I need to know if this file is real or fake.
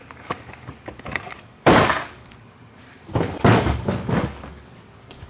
fake